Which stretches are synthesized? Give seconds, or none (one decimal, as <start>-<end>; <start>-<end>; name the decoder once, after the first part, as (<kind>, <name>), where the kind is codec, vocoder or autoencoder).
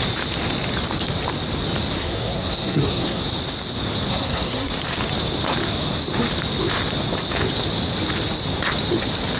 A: 2.0-3.2 (codec, SNAC); 4.1-4.7